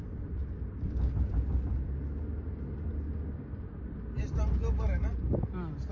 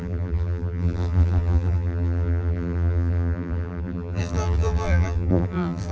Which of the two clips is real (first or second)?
first